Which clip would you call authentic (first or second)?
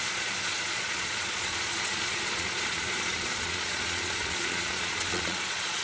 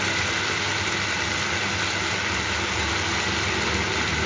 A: second